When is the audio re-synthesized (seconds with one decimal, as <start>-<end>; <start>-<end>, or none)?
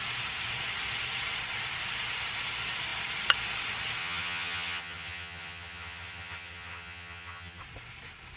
4.0-7.6